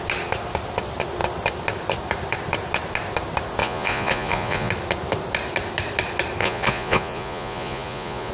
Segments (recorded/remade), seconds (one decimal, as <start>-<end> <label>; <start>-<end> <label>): 0.0-3.6 recorded; 3.6-4.7 remade; 4.7-6.4 recorded; 6.4-8.3 remade